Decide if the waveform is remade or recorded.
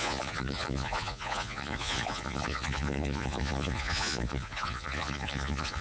remade